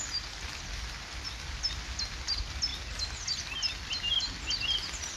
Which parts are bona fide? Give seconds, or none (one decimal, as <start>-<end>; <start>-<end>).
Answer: 0.0-5.2